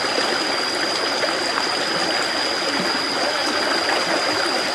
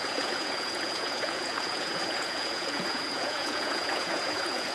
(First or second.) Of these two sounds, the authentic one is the first